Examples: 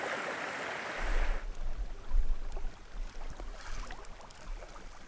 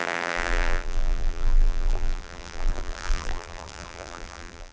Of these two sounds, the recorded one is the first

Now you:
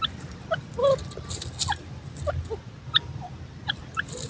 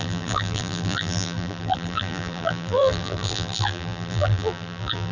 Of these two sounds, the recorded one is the first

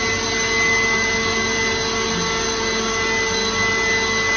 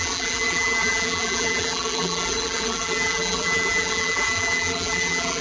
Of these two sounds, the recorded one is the first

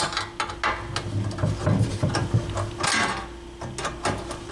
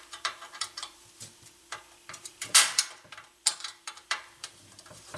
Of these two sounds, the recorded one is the first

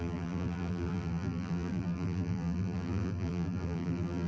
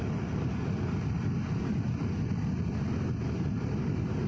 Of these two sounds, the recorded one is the second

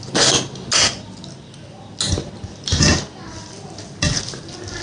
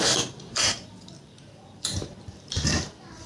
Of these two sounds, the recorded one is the first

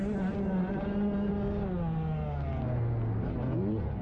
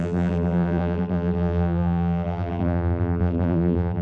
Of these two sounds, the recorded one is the first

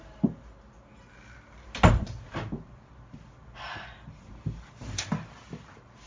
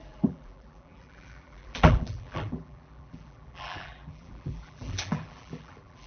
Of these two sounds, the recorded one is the first